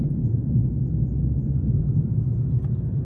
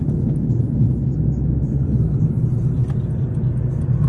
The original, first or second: second